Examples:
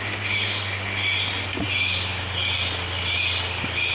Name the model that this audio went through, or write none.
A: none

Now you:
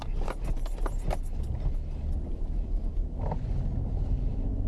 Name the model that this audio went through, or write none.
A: none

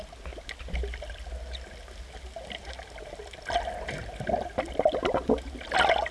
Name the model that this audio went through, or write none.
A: none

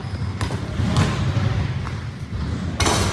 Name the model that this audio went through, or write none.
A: none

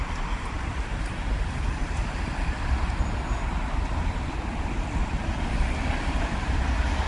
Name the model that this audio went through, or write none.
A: none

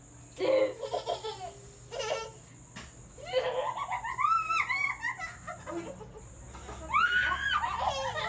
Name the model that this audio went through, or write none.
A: none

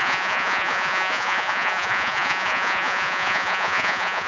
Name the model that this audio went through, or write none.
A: vocoder, Vocos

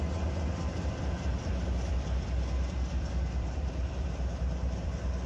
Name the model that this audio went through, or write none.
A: vocoder, BigVGAN v2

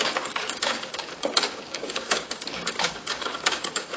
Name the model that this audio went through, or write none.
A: codec, DAC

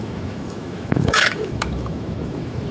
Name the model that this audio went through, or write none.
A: autoencoder, DAC-VAE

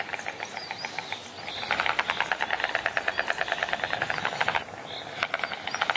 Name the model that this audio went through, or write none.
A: none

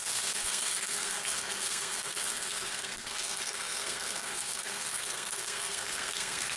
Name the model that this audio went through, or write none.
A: codec, SNAC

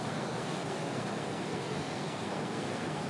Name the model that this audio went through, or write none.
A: codec, SNAC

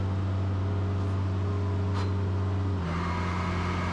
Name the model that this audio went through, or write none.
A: none